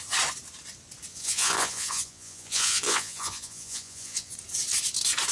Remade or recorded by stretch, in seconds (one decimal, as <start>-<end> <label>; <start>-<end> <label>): 0.0-1.1 recorded; 1.1-4.3 remade; 4.3-5.3 recorded